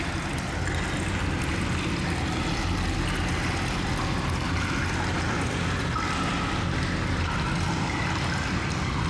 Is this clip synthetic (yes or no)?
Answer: no